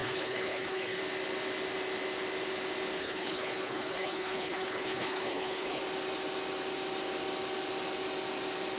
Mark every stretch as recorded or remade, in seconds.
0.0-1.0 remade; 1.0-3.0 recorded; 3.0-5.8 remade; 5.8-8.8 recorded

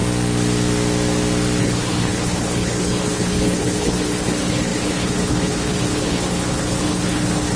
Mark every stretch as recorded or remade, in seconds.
0.0-1.6 recorded; 1.6-7.6 remade

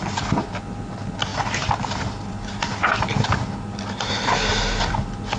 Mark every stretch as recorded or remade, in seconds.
0.0-5.4 recorded